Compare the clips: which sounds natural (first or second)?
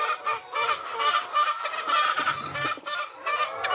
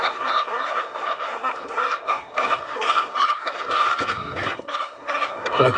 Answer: first